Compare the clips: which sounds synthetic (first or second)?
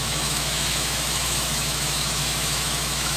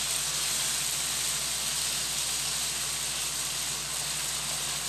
first